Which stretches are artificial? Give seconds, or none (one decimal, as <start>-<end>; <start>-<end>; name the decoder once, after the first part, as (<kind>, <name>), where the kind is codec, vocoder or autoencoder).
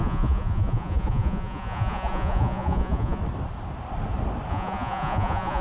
0.0-3.2 (vocoder, Vocos); 4.5-5.6